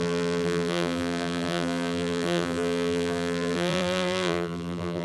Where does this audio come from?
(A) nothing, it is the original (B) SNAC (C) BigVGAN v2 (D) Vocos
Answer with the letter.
C